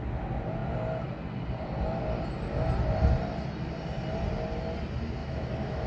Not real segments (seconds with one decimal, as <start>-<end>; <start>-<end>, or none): 5.2-5.9